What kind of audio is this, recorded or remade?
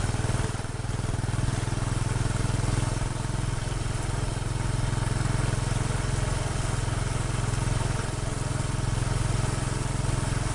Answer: recorded